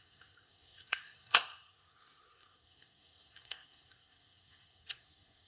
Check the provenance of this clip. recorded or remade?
remade